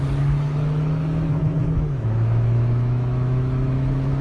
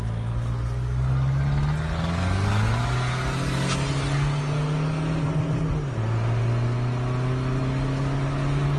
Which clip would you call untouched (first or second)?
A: second